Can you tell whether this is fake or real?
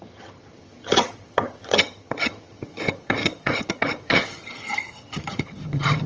fake